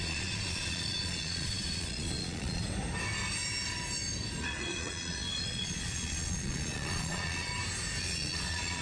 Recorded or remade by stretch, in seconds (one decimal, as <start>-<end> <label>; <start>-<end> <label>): 0.0-2.6 remade; 2.6-4.4 recorded; 4.4-7.5 remade; 7.5-8.0 recorded; 8.0-8.8 remade